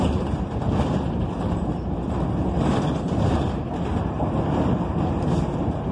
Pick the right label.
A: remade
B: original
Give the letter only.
A